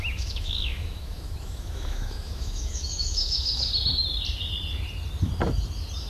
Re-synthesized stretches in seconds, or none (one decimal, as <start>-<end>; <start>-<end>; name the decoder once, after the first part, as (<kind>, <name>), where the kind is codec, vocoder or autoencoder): 0.0-3.7 (autoencoder, DAC-VAE)